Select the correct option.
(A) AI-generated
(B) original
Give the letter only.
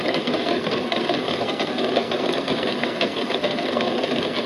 A